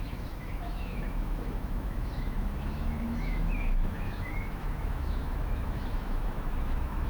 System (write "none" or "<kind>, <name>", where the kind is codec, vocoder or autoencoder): autoencoder, DAC-VAE